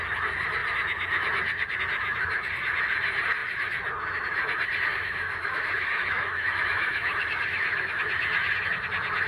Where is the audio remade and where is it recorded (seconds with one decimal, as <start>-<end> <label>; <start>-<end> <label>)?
0.0-4.9 recorded; 4.9-8.0 remade; 8.0-9.3 recorded

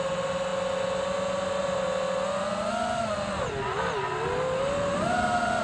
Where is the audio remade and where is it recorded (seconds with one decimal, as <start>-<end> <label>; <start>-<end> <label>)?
0.0-5.6 recorded